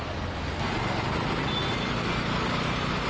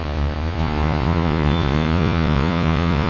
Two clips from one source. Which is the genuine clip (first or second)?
first